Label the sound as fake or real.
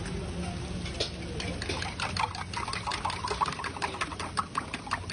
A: real